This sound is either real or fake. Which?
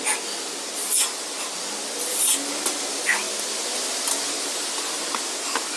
real